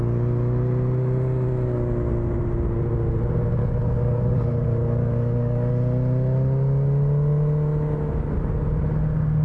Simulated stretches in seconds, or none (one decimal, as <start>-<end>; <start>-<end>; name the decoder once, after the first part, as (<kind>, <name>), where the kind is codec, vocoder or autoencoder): 3.6-5.7 (codec, DAC)

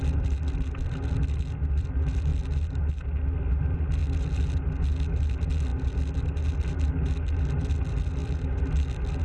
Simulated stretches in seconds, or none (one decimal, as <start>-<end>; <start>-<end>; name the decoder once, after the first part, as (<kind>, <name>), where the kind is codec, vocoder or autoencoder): none

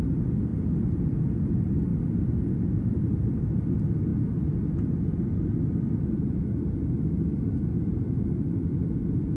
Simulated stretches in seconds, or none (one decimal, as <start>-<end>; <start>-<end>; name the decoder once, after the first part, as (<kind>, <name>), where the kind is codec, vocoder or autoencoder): 0.5-1.4 (vocoder, BigVGAN v2); 1.9-3.3